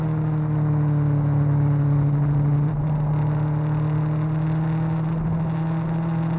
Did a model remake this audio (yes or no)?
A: no